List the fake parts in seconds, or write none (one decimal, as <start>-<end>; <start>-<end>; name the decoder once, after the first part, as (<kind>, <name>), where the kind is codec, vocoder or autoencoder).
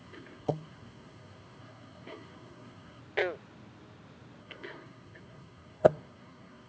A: 0.0-3.0 (codec, SNAC); 4.4-6.7